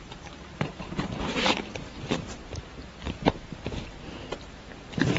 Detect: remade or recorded remade